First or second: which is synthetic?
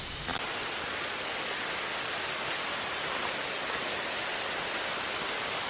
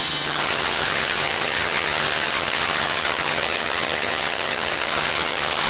second